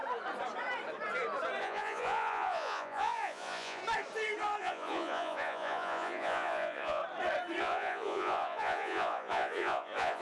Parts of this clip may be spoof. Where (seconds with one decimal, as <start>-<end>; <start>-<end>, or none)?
1.6-3.8; 4.6-7.0; 7.6-10.2